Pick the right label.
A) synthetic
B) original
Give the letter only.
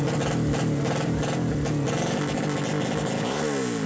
B